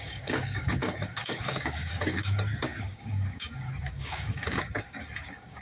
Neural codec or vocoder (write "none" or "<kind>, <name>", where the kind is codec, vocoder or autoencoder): codec, DAC